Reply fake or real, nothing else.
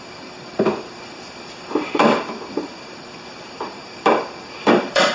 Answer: fake